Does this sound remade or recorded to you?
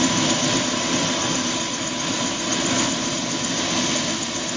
recorded